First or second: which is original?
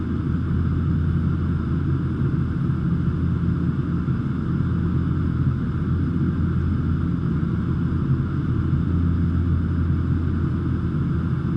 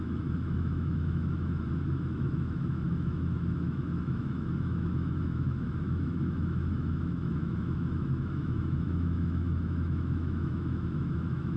first